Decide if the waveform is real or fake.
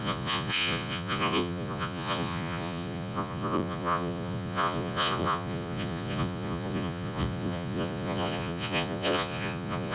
fake